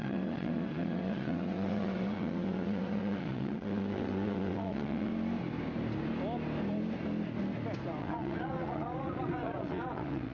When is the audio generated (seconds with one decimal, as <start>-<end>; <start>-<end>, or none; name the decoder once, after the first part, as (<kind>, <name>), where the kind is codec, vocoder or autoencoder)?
0.0-5.1 (vocoder, WaveNeXt); 8.0-10.3